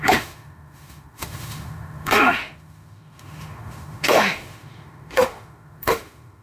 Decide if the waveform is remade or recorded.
remade